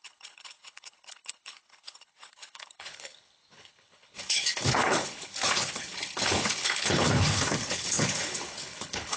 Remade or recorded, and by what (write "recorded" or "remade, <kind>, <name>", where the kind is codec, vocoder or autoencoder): remade, codec, HILCodec